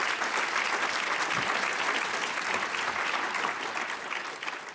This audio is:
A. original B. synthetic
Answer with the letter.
A